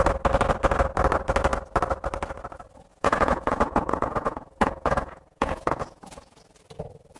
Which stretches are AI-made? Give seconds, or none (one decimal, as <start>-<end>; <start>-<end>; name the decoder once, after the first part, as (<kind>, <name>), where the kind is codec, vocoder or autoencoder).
2.9-6.4 (vocoder, Vocos)